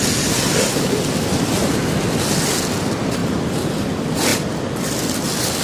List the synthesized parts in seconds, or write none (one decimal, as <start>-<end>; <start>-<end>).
4.3-5.6